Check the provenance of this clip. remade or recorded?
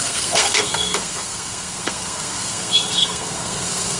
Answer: remade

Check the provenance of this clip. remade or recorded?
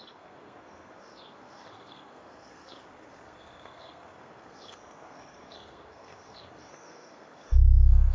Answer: remade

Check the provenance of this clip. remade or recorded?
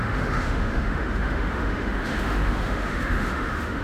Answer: remade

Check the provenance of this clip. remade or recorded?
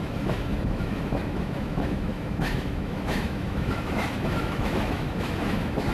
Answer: remade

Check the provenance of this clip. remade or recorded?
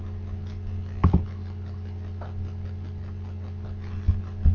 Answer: recorded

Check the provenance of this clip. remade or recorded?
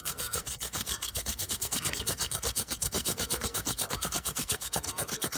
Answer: remade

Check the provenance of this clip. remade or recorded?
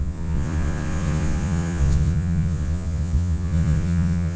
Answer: remade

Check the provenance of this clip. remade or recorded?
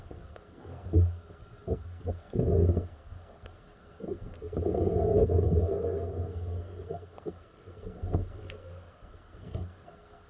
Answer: remade